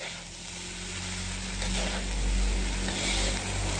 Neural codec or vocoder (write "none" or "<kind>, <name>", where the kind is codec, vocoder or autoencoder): none